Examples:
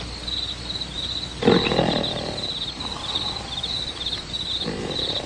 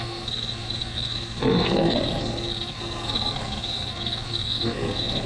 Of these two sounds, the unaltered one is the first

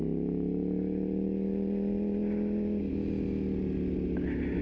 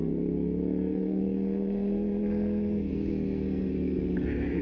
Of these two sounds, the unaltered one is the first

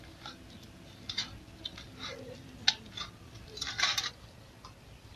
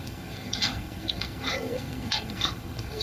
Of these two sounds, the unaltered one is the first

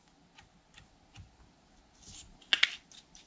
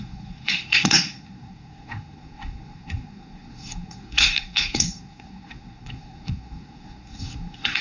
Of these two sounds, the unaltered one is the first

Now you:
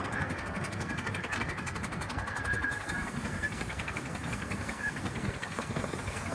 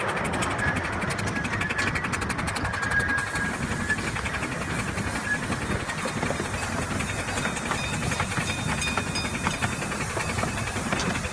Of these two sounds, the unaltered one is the second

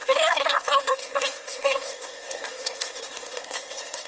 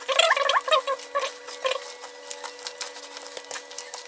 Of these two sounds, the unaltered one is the second